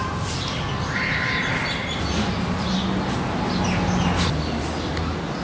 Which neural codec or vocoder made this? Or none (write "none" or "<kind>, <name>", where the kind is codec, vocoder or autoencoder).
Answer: none